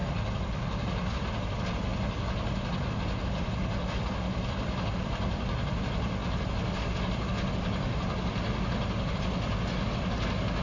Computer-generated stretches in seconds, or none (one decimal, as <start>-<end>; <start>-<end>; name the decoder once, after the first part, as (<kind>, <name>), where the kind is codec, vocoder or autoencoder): none